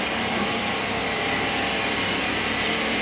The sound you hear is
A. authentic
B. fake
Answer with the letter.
A